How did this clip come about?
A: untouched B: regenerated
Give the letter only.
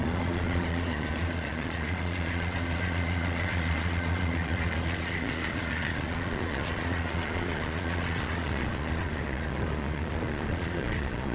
B